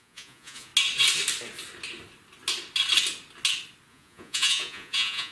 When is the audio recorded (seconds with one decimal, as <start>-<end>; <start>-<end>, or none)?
0.7-3.9